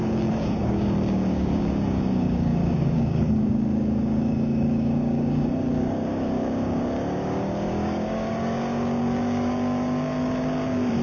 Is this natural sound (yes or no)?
no